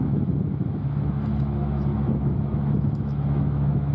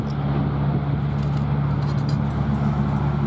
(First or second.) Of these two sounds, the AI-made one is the first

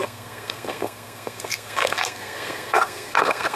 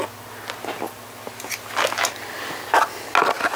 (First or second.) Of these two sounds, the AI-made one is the first